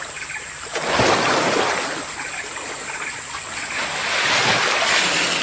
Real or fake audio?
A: real